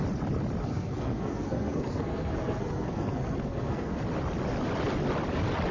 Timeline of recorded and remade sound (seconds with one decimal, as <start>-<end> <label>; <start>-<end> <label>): 0.0-0.6 recorded; 0.6-4.0 remade; 4.0-5.7 recorded